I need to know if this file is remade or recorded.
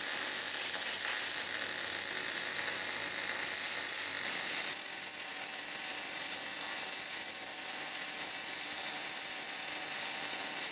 recorded